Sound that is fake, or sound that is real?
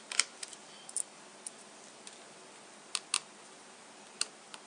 real